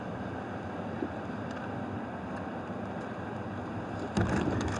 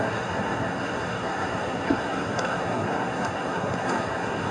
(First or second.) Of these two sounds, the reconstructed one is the second